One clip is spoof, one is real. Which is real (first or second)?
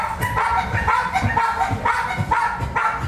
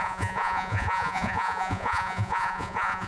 first